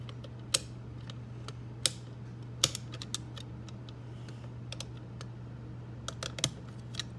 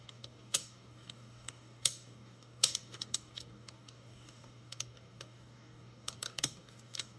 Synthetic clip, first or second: second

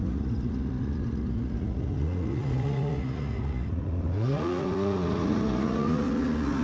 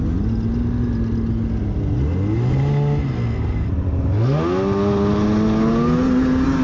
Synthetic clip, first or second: first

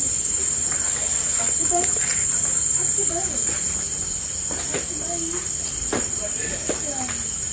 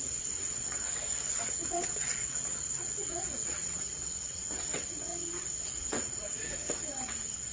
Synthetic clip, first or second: second